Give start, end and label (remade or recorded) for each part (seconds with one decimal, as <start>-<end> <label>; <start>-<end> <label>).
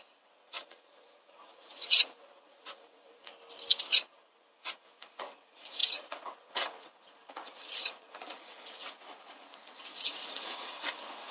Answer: 0.0-3.3 remade; 3.3-4.0 recorded; 4.0-11.3 remade